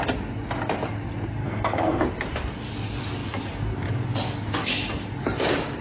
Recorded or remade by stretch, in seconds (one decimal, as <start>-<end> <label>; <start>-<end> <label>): 0.0-1.4 recorded; 1.4-2.0 remade; 2.0-5.8 recorded